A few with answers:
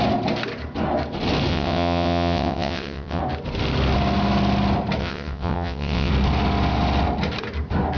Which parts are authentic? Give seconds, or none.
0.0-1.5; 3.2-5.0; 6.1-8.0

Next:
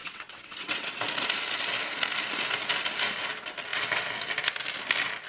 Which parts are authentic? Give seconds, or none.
0.9-5.3

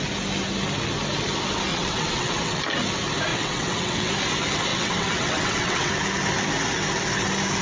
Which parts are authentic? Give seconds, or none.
0.0-1.7; 2.6-3.3; 4.1-4.7; 5.9-7.6

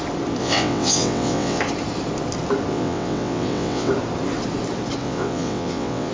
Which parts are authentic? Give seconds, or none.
0.0-0.4; 1.6-2.7; 3.9-5.0

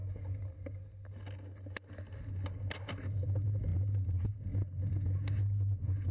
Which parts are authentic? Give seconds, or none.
0.0-6.1